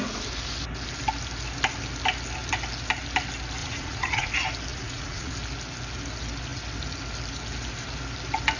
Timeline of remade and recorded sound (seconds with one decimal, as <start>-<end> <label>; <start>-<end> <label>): 0.0-3.6 recorded; 3.6-4.3 remade; 4.3-4.7 recorded; 4.7-5.3 remade; 5.3-8.6 recorded